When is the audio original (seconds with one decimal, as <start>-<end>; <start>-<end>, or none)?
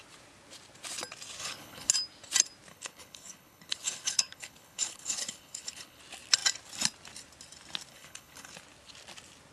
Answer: 0.0-1.4; 1.9-2.7; 6.0-7.9; 8.5-9.5